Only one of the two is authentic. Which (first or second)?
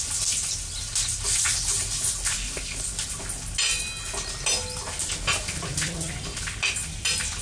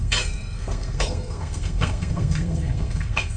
first